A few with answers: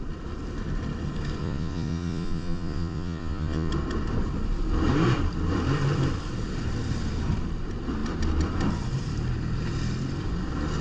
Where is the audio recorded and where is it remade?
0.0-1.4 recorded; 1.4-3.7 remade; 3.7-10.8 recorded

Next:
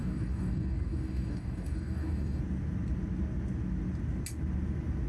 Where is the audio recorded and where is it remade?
0.0-2.4 remade; 2.4-5.1 recorded

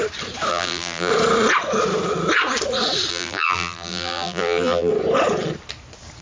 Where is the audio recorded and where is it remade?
0.0-0.5 recorded; 0.5-1.1 remade; 1.1-3.1 recorded; 3.1-4.9 remade; 4.9-6.2 recorded

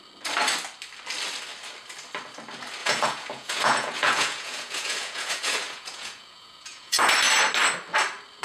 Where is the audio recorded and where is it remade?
0.0-2.8 recorded; 2.8-7.1 remade; 7.1-8.4 recorded